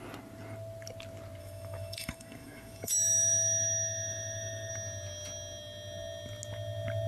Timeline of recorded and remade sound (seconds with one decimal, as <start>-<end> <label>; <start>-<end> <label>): 0.0-1.4 recorded; 1.4-4.7 remade; 4.7-7.1 recorded